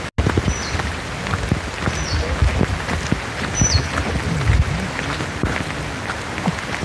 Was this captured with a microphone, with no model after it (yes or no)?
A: yes